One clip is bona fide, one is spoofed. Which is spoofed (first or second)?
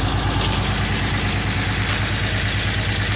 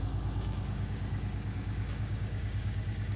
second